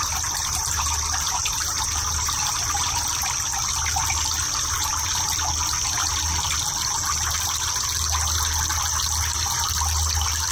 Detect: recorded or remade recorded